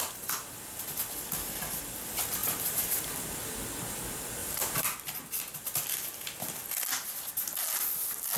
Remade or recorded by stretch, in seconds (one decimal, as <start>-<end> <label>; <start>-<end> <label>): 0.0-2.4 recorded; 2.4-3.0 remade; 3.0-4.4 recorded; 4.4-5.2 remade; 5.2-8.4 recorded